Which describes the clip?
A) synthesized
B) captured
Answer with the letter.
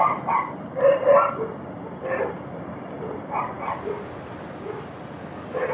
B